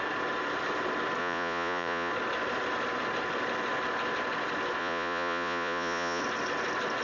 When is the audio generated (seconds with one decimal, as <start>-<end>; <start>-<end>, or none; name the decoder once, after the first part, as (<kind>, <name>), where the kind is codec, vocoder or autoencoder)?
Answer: 1.2-2.1 (vocoder, Vocos); 4.8-6.2